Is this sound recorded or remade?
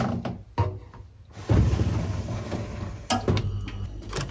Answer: recorded